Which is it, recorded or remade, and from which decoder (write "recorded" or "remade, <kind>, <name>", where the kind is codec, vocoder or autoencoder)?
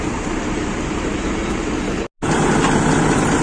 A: recorded